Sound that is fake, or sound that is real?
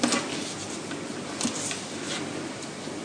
real